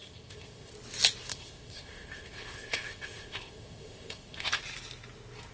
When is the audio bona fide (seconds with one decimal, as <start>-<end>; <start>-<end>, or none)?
0.7-1.3; 4.6-5.5